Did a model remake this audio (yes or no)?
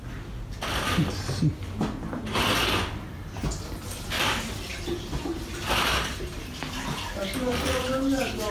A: no